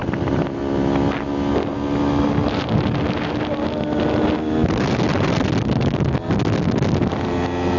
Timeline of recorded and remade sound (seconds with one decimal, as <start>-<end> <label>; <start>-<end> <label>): 0.0-0.6 remade; 0.6-7.8 recorded